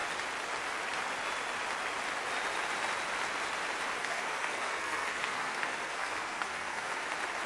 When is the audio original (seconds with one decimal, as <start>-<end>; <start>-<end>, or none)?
0.0-4.0; 7.1-7.5